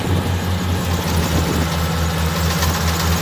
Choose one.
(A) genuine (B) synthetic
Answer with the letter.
A